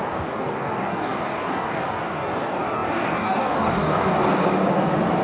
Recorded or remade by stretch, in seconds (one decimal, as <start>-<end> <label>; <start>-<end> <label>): 0.0-4.4 remade; 4.4-5.2 recorded